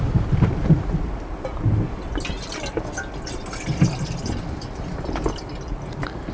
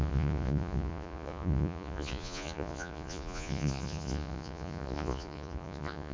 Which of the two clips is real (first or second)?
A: first